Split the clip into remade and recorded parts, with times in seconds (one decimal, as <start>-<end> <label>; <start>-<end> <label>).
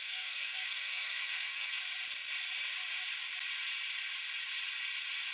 0.0-1.8 remade; 1.8-5.3 recorded